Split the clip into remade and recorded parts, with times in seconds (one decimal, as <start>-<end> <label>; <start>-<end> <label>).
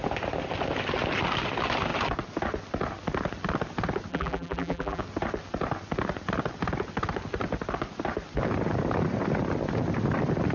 0.0-4.1 recorded; 4.1-5.0 remade; 5.0-10.5 recorded